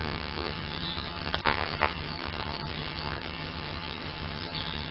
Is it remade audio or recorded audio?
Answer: remade